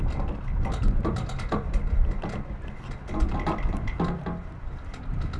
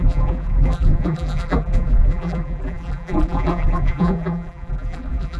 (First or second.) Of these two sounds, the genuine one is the first